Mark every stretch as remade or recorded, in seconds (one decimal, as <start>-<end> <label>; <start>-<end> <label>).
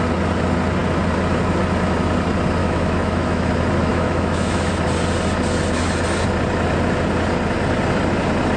0.0-2.6 recorded; 2.6-3.5 remade; 3.5-3.9 recorded; 3.9-4.7 remade; 4.7-8.6 recorded